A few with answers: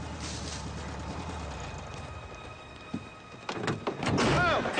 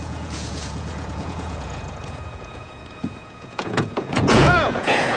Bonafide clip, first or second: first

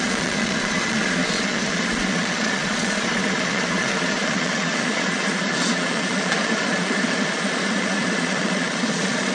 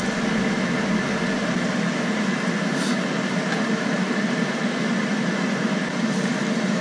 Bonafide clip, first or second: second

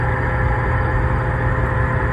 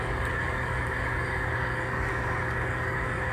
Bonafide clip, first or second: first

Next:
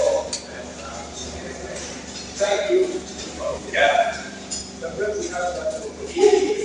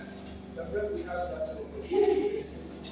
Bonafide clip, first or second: second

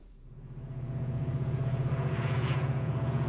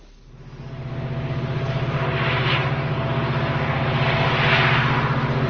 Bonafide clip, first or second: second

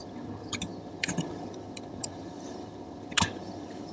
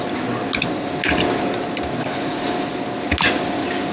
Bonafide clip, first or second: second